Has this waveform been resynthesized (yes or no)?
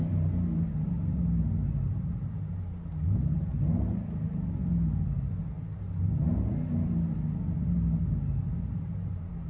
no